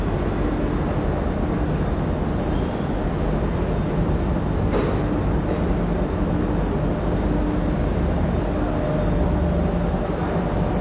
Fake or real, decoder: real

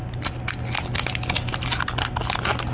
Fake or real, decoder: real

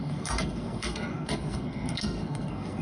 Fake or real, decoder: fake, codec, SNAC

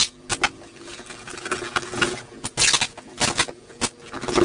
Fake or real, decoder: real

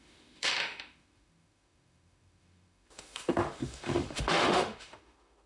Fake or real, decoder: fake, autoencoder, DAC-VAE